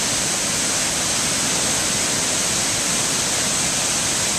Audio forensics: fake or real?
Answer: real